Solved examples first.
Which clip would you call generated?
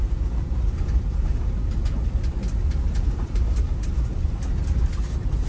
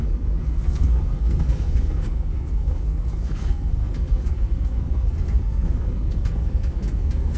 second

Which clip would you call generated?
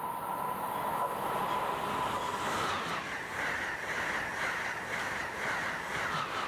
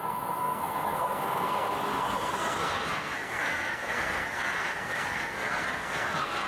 second